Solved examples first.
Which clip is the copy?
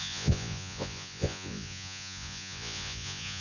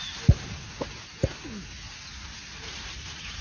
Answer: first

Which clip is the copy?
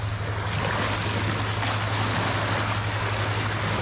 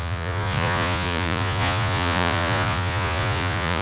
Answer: second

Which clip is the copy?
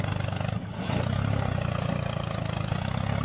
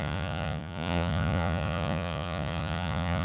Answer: second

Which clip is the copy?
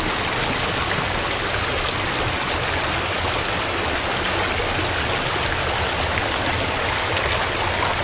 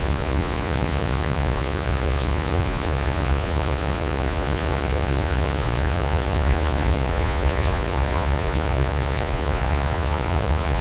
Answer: second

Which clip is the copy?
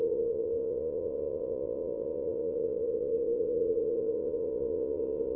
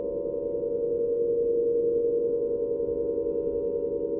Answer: first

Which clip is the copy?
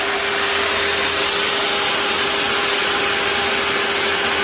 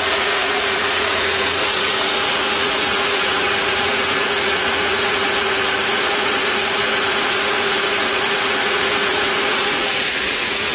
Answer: second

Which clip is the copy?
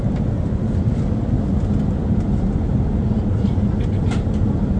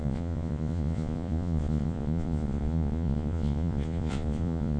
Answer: second